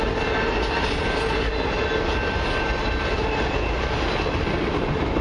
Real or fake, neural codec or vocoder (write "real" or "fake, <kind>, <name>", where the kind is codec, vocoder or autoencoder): real